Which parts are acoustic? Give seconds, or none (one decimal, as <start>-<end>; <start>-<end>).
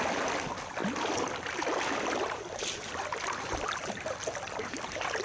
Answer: none